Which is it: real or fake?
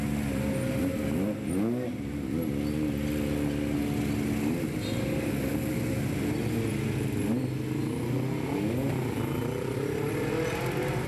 real